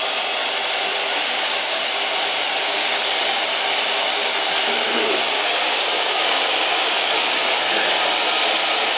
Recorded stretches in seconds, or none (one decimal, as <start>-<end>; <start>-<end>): 0.0-1.0; 1.9-2.6; 3.4-4.2; 8.0-9.0